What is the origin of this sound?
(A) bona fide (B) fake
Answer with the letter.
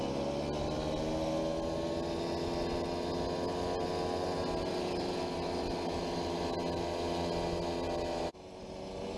A